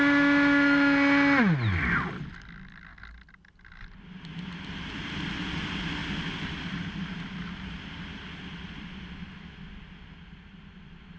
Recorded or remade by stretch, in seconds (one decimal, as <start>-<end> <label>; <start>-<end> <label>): 0.0-11.2 recorded